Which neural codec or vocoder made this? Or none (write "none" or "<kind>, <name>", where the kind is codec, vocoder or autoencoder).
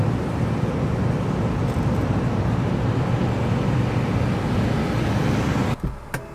none